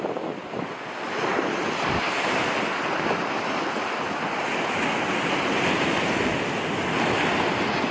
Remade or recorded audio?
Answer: recorded